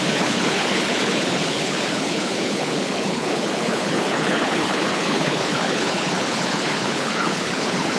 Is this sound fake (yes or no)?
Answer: yes